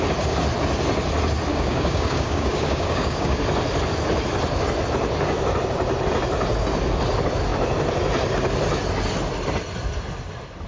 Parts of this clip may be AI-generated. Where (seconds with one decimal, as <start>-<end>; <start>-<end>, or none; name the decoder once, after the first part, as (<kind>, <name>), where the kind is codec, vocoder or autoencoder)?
1.5-3.4 (codec, DAC)